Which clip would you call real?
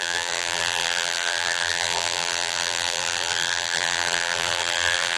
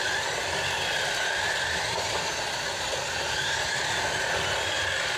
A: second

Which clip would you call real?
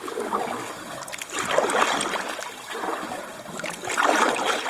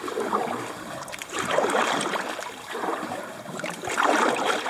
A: first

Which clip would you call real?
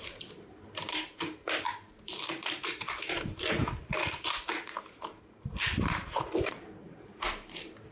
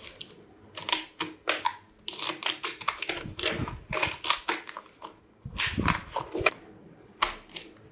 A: second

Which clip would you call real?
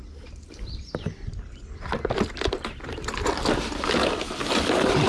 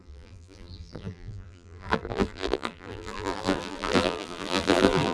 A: first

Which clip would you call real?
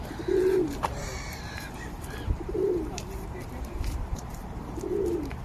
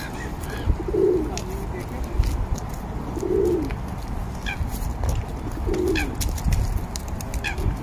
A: second